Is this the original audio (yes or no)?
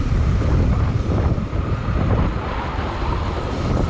yes